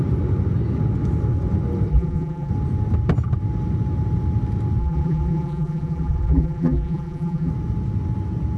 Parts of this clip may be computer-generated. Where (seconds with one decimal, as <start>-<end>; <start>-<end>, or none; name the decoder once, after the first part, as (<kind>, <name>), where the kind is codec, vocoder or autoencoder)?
1.9-2.5 (vocoder, BigVGAN v2); 4.8-7.5